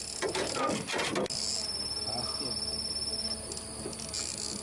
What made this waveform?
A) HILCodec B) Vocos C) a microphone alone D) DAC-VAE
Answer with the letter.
C